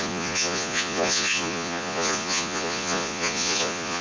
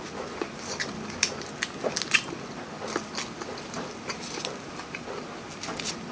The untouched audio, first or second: second